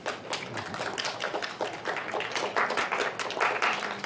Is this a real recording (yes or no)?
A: yes